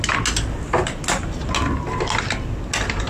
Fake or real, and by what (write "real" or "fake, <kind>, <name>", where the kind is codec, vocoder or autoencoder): real